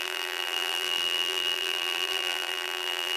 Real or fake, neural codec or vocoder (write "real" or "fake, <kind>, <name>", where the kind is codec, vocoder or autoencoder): fake, vocoder, BigVGAN v2